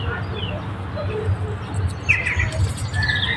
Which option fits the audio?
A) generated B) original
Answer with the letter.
B